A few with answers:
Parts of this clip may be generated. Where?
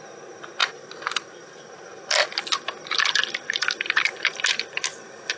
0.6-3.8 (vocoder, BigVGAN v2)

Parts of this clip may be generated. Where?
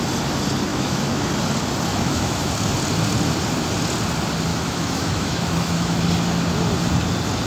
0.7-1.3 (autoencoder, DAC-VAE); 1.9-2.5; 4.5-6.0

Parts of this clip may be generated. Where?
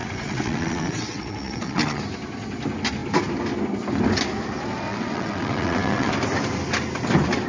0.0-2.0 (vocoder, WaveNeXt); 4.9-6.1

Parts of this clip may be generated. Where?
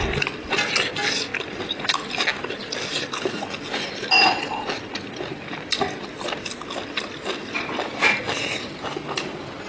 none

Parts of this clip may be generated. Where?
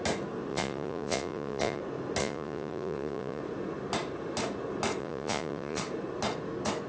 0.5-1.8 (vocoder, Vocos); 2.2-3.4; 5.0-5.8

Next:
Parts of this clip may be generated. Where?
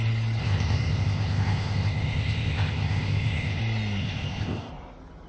0.4-3.6 (codec, ZipCodec); 4.0-4.7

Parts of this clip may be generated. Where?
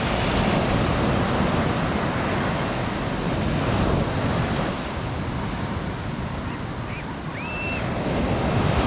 none